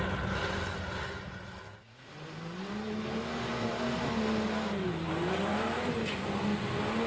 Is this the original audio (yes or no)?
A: yes